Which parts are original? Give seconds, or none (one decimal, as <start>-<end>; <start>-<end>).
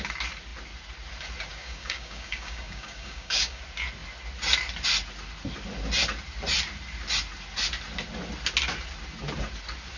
0.0-1.5; 3.6-10.0